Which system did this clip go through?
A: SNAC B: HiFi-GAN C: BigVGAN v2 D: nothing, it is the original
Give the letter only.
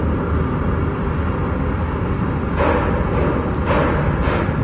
D